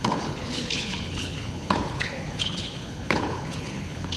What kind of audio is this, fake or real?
fake